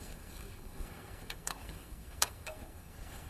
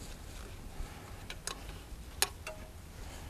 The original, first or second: second